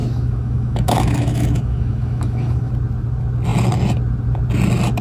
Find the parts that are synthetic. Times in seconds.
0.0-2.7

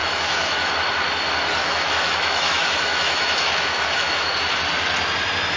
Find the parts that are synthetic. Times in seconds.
0.0-0.7; 1.6-4.3

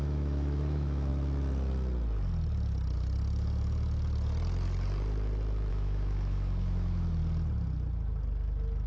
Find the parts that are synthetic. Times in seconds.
0.0-1.1; 5.7-7.2

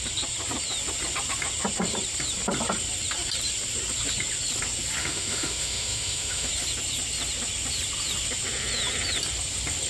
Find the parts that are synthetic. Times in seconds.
5.0-6.5

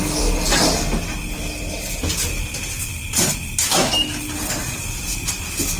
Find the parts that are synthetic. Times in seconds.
3.7-4.2

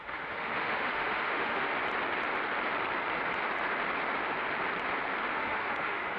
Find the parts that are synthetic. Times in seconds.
0.0-1.7; 5.3-6.2

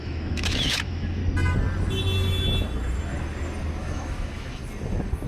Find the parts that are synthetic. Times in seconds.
0.0-1.2; 3.8-4.6

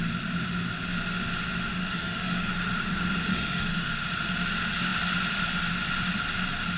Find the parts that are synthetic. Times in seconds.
1.8-2.5; 3.3-3.9